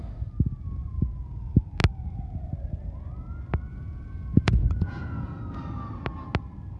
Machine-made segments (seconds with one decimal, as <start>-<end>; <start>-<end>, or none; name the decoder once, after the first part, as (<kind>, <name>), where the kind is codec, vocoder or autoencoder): 3.7-5.4 (vocoder, Vocos)